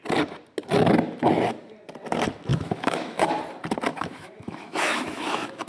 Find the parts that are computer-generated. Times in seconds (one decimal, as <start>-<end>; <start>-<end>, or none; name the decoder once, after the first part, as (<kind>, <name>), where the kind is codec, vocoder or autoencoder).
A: 2.5-3.3 (autoencoder, DAC-VAE); 3.9-5.7